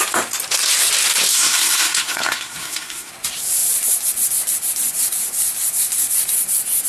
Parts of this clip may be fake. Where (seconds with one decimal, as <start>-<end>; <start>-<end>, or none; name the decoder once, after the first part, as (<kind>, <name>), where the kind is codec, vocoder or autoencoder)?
1.3-3.1 (codec, SNAC)